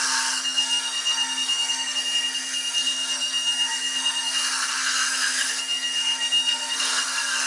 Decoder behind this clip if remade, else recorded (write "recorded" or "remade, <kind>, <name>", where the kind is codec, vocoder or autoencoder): remade, codec, SNAC